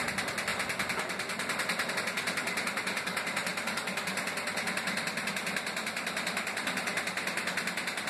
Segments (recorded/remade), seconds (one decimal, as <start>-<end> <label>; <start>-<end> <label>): 0.0-8.1 recorded